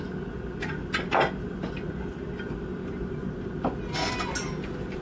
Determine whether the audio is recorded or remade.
recorded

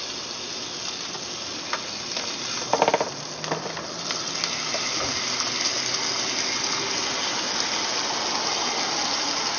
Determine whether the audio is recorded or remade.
recorded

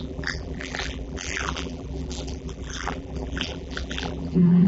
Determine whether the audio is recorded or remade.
remade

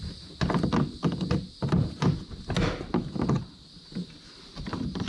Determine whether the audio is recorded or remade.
recorded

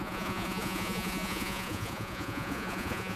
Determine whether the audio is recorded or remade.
remade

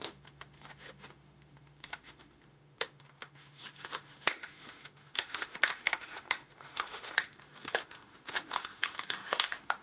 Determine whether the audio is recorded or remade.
remade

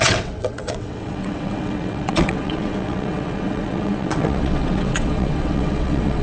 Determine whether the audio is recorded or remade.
remade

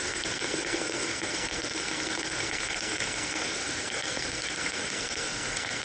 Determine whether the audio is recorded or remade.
remade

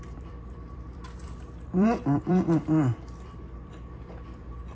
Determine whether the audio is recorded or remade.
remade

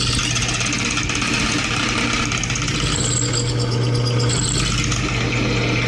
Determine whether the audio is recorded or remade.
recorded